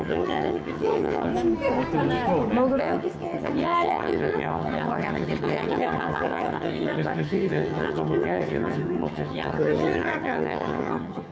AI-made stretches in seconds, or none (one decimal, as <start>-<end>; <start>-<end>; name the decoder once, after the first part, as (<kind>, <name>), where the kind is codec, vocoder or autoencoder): 0.0-1.3 (vocoder, HiFi-GAN); 2.8-11.3